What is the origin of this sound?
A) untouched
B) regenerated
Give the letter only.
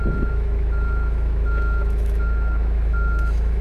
B